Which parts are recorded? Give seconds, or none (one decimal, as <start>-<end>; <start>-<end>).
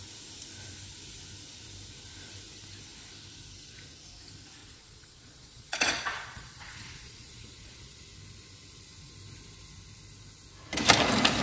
0.0-4.6; 8.0-11.4